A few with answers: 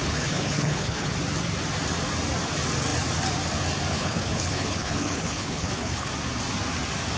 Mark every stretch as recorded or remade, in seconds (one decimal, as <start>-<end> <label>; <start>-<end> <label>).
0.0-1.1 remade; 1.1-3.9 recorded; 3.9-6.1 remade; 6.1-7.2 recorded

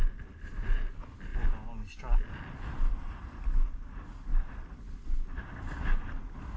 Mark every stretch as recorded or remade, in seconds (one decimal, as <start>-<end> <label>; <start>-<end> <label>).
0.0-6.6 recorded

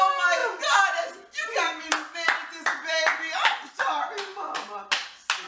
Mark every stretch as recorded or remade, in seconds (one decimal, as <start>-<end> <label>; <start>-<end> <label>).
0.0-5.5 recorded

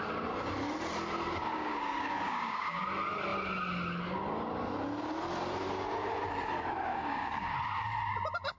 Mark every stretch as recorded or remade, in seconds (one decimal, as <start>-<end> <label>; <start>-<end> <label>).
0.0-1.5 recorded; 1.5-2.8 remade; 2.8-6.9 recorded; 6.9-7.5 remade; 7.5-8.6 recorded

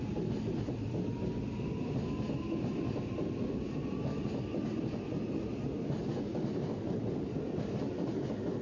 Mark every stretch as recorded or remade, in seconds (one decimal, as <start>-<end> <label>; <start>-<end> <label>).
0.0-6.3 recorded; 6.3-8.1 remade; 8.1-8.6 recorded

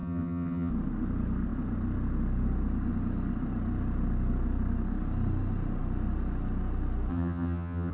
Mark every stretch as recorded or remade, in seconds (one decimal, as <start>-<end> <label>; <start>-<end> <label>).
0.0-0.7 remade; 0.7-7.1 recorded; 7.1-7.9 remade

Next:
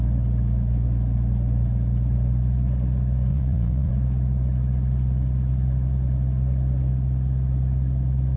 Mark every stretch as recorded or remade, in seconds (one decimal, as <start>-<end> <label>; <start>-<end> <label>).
0.0-3.3 recorded; 3.3-3.9 remade; 3.9-8.4 recorded